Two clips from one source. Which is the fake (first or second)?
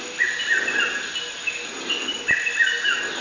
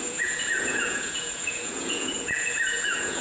second